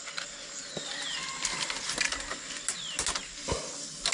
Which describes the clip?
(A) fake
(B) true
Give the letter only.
B